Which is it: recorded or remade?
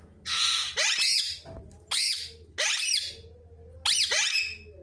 recorded